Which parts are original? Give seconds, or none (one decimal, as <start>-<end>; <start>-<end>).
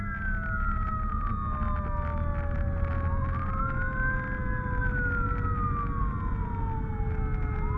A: 0.0-7.8